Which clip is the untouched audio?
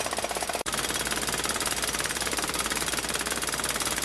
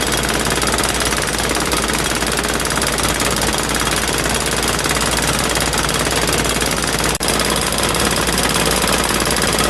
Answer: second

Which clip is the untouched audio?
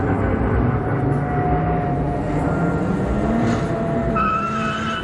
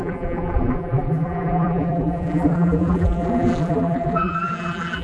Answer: first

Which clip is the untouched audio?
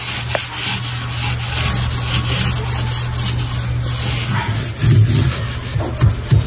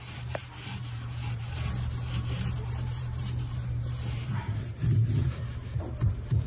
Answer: first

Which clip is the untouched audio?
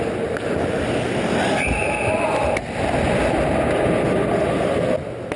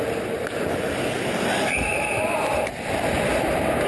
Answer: first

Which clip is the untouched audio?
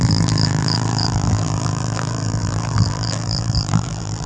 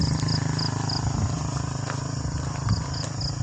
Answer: second